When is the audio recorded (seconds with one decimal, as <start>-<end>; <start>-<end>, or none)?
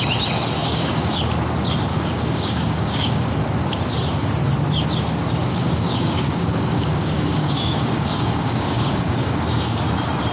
0.0-0.6; 1.2-1.9; 3.4-5.5; 9.8-10.3